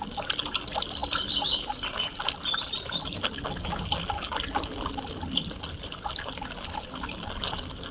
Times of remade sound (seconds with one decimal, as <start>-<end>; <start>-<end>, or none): none